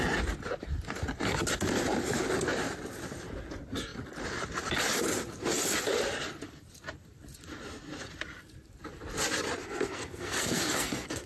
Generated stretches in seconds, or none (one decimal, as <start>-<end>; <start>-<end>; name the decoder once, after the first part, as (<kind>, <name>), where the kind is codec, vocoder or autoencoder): 9.6-11.3 (codec, SNAC)